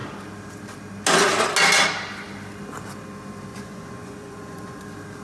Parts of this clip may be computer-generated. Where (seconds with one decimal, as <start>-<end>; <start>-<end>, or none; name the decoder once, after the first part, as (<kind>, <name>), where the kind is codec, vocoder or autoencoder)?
3.5-4.8 (vocoder, Vocos)